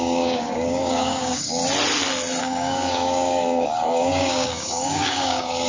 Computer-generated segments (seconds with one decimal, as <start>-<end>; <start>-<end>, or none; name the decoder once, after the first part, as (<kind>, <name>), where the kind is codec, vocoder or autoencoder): 0.0-1.6 (codec, DAC); 2.4-5.7